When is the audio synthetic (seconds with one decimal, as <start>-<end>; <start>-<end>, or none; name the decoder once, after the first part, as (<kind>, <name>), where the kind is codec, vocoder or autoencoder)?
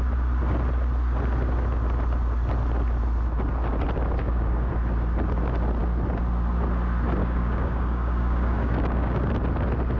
4.2-4.7 (codec, DAC); 7.2-9.3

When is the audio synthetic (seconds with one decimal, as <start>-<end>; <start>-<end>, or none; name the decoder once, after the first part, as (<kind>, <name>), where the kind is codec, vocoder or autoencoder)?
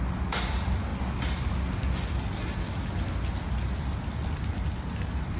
none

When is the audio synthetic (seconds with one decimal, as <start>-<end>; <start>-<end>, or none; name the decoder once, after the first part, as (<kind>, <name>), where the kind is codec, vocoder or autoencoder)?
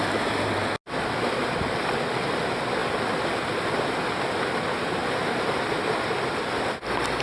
none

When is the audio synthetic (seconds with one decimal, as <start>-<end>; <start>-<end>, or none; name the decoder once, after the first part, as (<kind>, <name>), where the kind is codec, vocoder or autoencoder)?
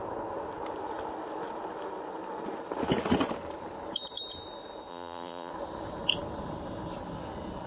4.9-5.5 (vocoder, BigVGAN v2)